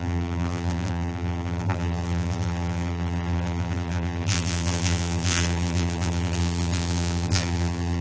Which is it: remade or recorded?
remade